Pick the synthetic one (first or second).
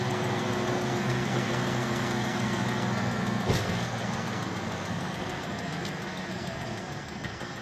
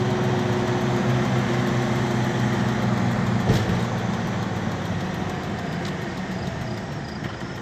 first